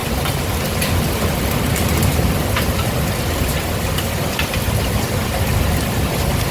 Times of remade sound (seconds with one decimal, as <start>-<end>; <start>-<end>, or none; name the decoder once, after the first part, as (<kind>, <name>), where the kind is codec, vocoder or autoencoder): none